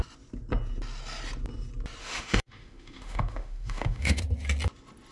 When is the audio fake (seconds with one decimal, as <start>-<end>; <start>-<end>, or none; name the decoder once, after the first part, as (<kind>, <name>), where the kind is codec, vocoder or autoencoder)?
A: 2.0-4.2 (autoencoder, DAC-VAE)